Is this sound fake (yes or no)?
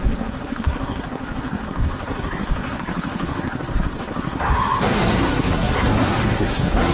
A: yes